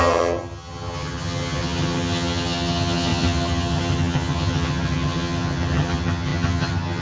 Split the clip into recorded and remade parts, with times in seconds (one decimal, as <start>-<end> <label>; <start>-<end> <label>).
0.0-7.0 remade